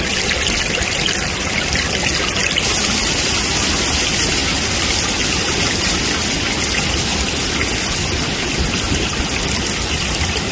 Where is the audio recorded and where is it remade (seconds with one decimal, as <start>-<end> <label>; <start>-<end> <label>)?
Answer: 0.0-10.5 recorded